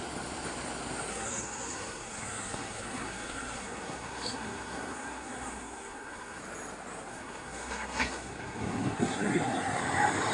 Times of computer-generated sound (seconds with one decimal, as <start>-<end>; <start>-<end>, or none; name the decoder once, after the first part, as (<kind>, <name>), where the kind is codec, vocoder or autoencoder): 1.1-6.4 (codec, SNAC); 7.1-9.8